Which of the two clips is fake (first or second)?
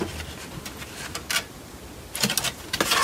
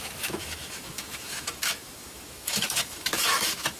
second